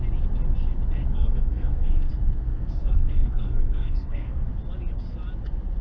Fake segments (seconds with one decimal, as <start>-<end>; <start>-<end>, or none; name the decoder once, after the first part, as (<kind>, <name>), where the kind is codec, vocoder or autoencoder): 1.0-2.1 (codec, SNAC); 2.5-4.5